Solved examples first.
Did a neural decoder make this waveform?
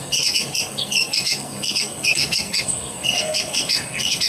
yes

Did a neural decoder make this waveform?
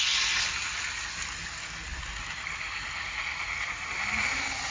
no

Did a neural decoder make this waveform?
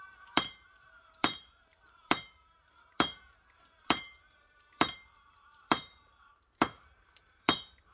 yes